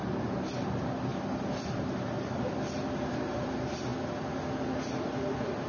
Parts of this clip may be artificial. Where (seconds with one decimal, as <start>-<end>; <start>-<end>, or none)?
1.1-3.5